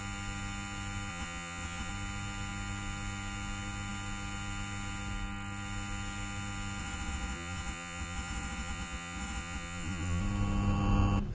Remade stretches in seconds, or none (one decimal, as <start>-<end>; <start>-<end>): 1.1-1.9; 6.8-10.2